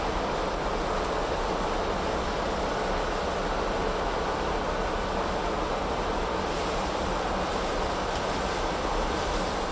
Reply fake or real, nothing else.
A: real